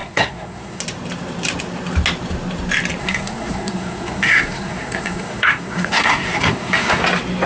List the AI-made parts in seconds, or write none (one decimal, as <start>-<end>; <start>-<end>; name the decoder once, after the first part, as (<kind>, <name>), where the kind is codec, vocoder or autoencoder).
0.0-0.8 (codec, SNAC); 3.0-7.0